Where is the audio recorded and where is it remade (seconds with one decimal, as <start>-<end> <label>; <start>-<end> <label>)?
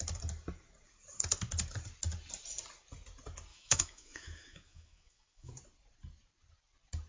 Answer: 0.0-3.5 recorded; 3.5-5.5 remade; 5.5-7.1 recorded